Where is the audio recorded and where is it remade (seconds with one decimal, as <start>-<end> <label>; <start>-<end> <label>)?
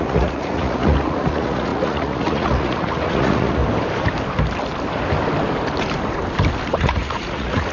0.0-3.6 remade; 3.6-6.7 recorded; 6.7-7.7 remade